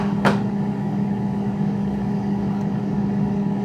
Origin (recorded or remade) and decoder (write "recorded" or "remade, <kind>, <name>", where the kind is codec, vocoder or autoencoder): remade, codec, DAC